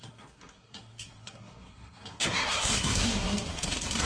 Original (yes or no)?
no